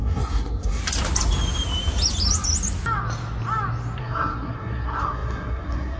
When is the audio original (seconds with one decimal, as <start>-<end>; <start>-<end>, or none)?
0.8-4.0